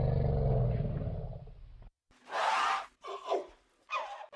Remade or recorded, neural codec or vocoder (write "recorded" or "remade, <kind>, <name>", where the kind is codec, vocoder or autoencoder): recorded